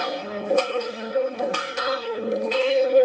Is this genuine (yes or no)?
no